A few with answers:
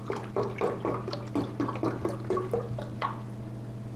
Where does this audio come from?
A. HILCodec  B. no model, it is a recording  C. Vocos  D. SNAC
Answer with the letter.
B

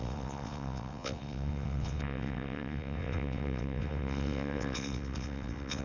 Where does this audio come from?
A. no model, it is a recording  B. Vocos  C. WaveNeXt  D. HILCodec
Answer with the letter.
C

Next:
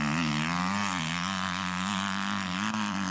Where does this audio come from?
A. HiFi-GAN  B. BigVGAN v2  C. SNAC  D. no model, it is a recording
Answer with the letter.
D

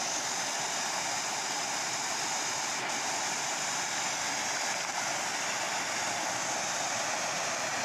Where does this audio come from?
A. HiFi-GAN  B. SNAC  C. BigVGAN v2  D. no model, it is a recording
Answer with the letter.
D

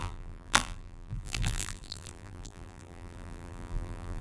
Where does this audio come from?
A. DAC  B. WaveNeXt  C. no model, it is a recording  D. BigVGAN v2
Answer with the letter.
D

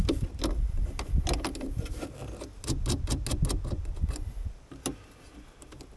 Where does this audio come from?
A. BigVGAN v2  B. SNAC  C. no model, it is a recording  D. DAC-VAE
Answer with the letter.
C